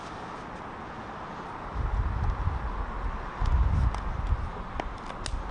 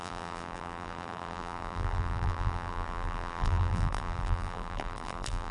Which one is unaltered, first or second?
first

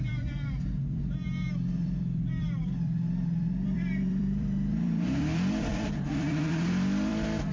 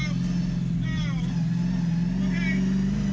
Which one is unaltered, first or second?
second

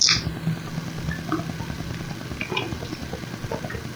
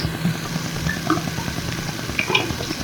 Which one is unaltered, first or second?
first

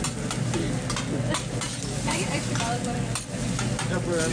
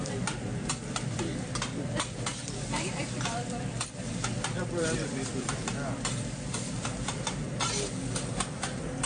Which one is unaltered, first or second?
first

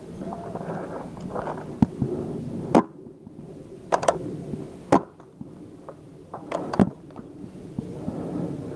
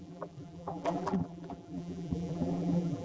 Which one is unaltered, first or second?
first